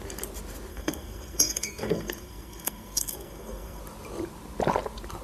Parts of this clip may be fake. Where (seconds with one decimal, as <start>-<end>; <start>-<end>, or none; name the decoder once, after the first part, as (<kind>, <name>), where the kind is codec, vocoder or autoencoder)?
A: 0.7-3.8 (codec, SNAC)